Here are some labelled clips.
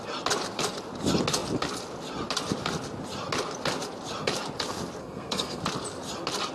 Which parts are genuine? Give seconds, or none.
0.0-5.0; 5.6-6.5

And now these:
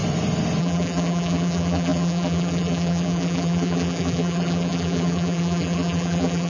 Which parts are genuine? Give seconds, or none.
0.0-0.6

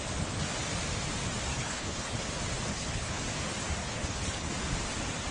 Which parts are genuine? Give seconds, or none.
0.0-1.5; 2.2-2.7; 3.2-3.8; 4.5-5.3

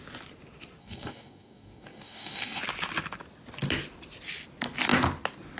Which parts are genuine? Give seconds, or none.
0.0-0.8; 2.6-5.6